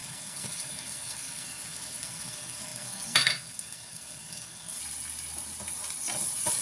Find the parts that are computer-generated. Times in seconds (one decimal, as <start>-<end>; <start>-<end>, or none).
0.0-4.8